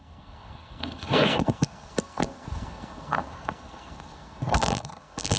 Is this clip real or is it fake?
fake